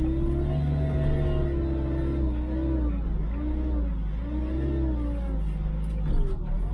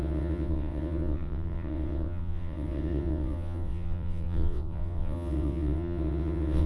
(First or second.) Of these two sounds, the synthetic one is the second